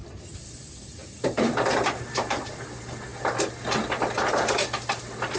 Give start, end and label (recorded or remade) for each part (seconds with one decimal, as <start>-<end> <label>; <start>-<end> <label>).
0.0-1.0 recorded; 1.0-2.5 remade; 2.5-5.4 recorded